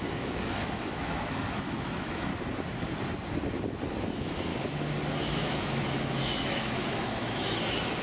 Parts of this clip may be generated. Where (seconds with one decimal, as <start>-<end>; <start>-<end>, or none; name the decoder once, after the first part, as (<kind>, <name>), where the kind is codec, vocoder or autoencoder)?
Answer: 0.0-2.3 (autoencoder, DAC-VAE); 4.0-4.5; 5.2-8.0